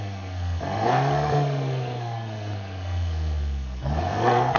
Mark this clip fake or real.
fake